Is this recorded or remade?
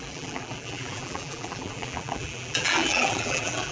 remade